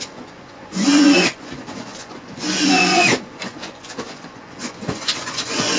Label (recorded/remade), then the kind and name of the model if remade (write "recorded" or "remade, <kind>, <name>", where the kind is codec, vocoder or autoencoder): remade, vocoder, Vocos